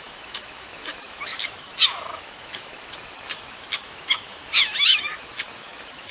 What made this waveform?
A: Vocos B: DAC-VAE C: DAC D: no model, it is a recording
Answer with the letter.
B